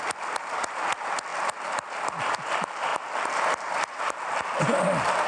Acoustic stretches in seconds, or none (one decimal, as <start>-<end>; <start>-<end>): 0.0-5.3